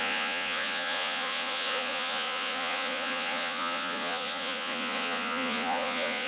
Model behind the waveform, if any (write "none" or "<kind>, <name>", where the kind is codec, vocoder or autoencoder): vocoder, Vocos